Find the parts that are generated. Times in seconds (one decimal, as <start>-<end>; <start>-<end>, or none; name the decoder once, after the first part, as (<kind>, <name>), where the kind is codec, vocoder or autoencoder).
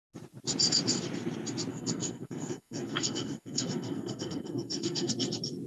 1.7-5.1 (codec, SNAC)